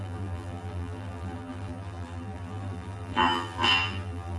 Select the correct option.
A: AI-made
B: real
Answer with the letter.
A